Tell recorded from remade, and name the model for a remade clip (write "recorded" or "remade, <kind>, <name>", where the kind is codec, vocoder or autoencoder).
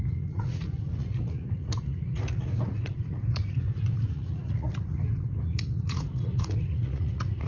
remade, vocoder, Vocos